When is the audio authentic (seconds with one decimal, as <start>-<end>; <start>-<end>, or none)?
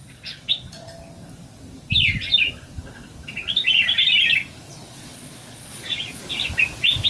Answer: 0.9-4.7; 6.2-7.1